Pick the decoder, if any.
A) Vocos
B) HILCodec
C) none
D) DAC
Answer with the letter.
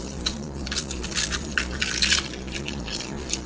A